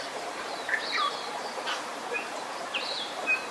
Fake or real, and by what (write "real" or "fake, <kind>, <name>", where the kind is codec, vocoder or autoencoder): fake, vocoder, BigVGAN v2